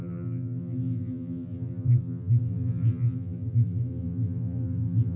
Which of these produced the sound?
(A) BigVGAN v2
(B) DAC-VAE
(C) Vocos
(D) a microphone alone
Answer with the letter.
A